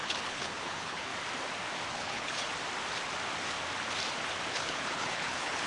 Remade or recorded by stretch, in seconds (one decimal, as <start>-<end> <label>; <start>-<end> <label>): 0.0-1.1 remade; 1.1-1.9 recorded; 1.9-2.5 remade; 2.5-4.5 recorded; 4.5-5.7 remade